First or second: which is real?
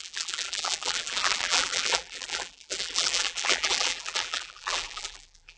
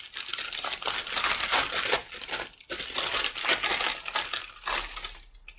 second